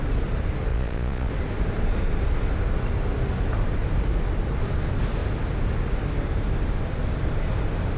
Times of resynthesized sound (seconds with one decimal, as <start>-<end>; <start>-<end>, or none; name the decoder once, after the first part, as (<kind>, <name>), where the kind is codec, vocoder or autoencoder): 0.7-1.3 (vocoder, Vocos)